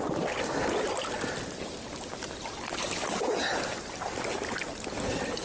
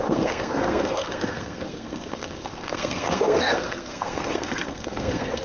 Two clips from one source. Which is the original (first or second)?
first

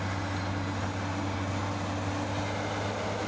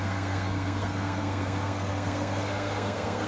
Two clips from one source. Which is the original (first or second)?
first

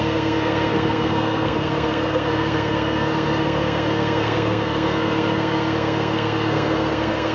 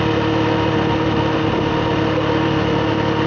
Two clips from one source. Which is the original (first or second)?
second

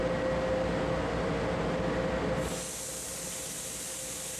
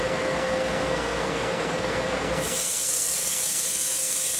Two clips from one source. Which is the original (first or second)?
first